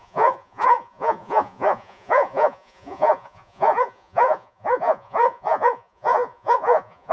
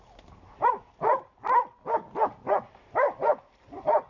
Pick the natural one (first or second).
second